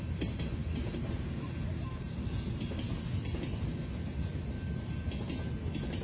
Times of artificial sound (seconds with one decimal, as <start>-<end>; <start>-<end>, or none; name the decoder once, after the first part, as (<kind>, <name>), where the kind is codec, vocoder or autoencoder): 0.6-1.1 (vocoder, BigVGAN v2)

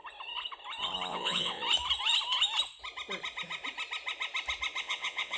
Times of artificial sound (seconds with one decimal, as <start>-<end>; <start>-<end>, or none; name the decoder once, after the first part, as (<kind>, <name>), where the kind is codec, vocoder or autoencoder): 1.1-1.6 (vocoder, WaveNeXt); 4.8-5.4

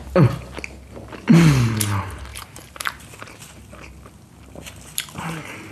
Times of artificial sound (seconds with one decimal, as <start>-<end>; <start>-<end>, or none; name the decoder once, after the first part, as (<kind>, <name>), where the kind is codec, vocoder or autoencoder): 2.3-3.1 (vocoder, BigVGAN v2)

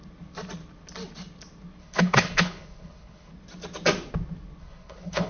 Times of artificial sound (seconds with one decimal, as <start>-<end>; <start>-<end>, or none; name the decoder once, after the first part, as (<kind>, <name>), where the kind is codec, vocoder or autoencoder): 1.8-3.3 (codec, HILCodec); 4.6-5.3

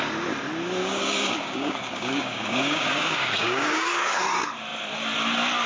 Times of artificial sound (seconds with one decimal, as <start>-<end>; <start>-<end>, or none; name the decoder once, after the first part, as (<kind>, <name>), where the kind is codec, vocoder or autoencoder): 0.8-4.2 (codec, DAC)

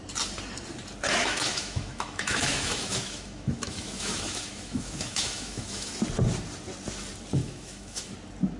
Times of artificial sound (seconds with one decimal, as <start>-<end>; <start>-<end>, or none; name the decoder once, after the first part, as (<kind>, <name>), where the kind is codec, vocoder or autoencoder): 1.2-5.9 (autoencoder, DAC-VAE); 7.4-8.1